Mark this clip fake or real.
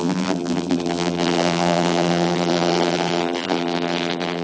fake